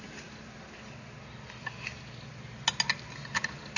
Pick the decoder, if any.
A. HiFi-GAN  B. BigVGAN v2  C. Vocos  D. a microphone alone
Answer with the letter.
D